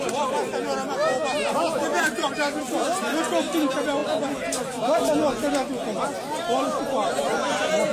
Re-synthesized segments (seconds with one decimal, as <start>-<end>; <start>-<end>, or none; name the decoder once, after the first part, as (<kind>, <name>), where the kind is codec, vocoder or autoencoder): 1.9-2.6 (vocoder, BigVGAN v2)